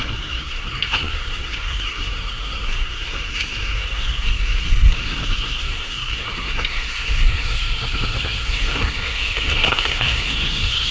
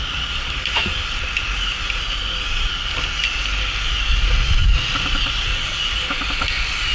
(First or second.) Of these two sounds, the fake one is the first